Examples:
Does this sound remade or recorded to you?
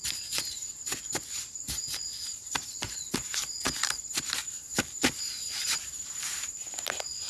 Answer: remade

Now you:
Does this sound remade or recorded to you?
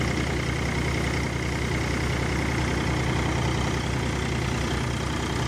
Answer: recorded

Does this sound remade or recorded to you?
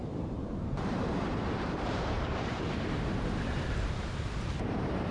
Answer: remade